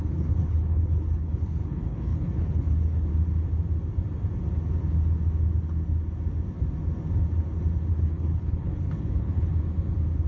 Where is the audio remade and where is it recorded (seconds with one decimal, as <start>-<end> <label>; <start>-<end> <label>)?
0.0-3.1 remade; 3.1-7.9 recorded; 7.9-9.5 remade; 9.5-10.3 recorded